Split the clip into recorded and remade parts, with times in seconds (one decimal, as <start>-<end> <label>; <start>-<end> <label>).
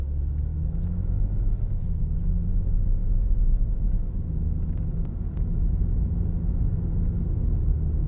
0.0-0.5 recorded; 0.5-1.2 remade; 1.2-8.1 recorded